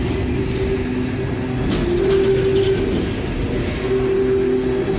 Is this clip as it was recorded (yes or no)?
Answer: yes